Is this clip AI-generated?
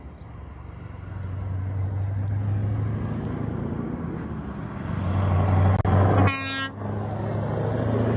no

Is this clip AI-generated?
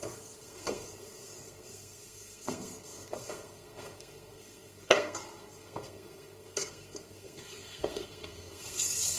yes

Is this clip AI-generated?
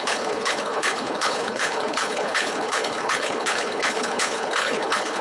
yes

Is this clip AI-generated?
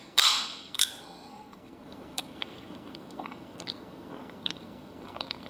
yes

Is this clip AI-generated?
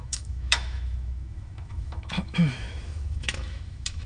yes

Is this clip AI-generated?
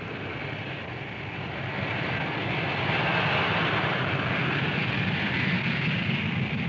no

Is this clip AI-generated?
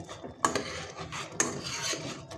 no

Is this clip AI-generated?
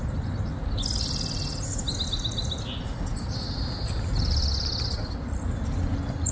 no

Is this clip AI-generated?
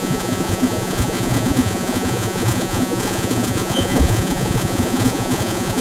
yes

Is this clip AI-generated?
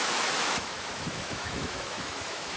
yes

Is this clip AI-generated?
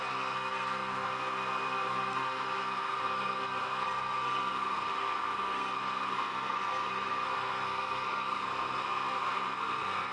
yes